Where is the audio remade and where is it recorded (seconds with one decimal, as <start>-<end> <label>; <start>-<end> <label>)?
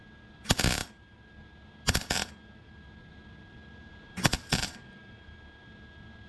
0.0-6.3 recorded